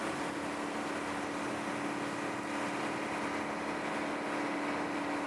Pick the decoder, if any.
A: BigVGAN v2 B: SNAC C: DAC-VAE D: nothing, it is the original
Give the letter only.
D